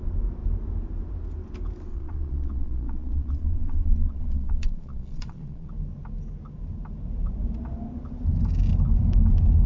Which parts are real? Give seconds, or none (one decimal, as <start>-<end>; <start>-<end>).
0.0-1.9; 5.7-9.7